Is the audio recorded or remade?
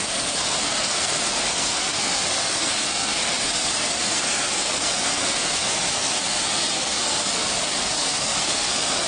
remade